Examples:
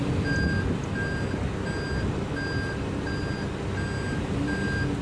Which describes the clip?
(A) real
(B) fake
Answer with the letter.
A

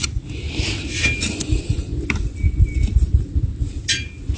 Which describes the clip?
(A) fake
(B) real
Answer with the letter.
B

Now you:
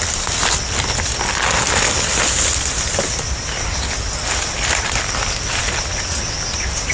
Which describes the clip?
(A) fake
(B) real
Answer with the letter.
B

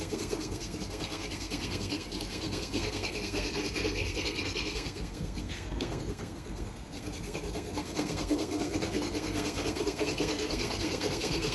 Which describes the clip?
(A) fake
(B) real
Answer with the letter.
A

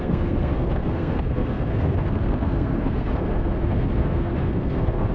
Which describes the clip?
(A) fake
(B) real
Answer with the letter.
A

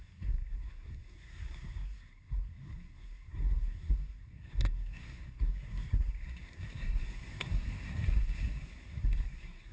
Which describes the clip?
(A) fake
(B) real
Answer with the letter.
A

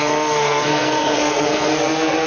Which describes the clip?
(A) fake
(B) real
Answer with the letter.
A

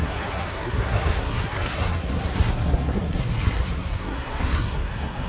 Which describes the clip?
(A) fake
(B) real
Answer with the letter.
A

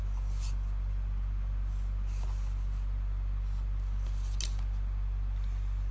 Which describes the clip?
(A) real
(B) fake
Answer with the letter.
A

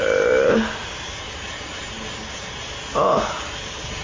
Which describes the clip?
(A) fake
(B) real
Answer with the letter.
B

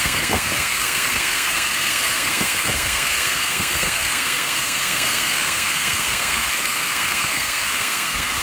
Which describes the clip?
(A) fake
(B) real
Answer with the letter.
A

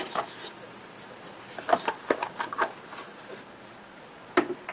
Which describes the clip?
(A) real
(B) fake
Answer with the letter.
A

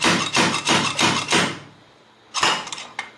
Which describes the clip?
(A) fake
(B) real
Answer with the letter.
B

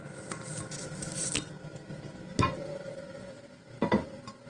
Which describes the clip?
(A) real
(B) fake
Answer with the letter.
A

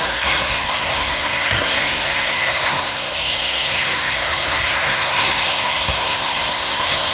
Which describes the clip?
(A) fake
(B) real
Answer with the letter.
A